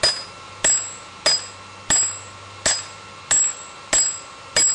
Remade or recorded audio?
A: recorded